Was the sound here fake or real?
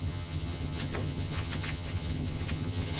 fake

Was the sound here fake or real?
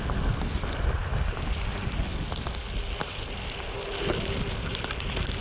real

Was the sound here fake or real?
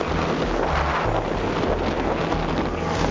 real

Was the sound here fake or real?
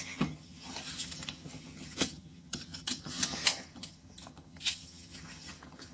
fake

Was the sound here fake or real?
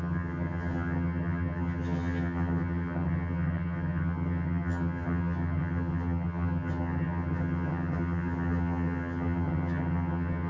fake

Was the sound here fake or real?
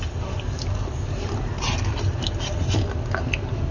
real